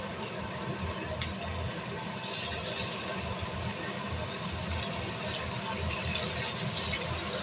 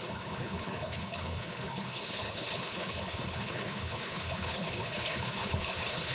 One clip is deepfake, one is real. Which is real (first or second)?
first